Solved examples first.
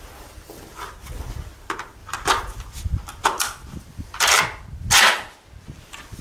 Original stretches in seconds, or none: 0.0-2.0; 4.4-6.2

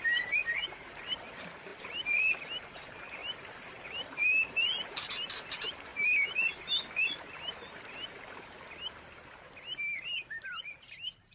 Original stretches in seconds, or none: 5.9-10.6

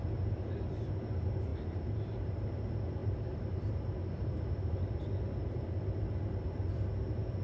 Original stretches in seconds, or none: 0.0-1.5; 2.4-3.0; 5.0-7.4

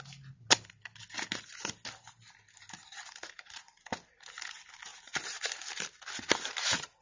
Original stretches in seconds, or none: 0.0-2.9; 3.8-4.9; 5.8-7.0

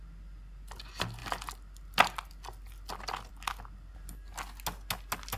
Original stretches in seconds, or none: 0.0-5.4